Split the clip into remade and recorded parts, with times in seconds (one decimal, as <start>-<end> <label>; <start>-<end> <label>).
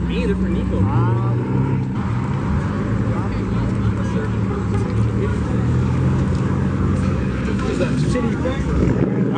0.0-5.3 recorded; 5.3-9.4 remade